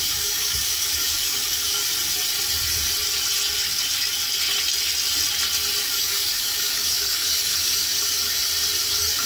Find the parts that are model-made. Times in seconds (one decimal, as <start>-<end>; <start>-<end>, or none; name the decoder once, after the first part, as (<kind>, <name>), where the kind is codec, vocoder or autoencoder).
0.0-1.8 (codec, DAC); 5.8-8.4; 8.9-9.3